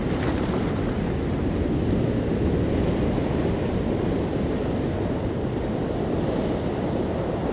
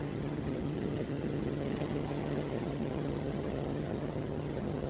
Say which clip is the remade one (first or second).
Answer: second